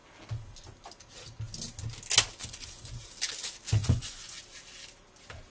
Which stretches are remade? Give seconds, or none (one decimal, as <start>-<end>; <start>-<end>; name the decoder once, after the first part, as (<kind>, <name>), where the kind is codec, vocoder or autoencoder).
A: 2.4-3.0 (vocoder, Vocos); 3.8-4.4